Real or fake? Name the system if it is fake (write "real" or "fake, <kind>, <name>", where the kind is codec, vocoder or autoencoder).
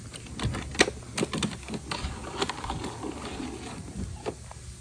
real